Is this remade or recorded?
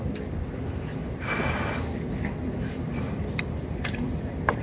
recorded